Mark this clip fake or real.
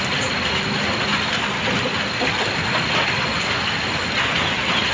real